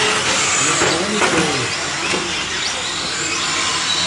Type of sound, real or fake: real